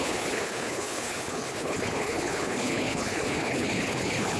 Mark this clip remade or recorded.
remade